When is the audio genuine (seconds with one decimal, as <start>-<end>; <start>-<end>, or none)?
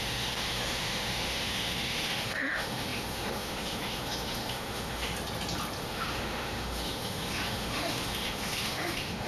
5.1-5.8